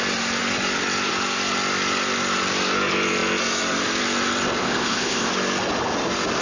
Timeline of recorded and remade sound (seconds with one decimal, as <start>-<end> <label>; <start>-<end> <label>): 0.0-4.6 recorded; 4.6-5.3 remade; 5.3-6.4 recorded